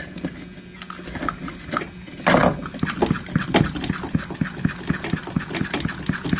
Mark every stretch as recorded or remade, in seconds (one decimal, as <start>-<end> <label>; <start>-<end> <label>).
0.0-6.4 recorded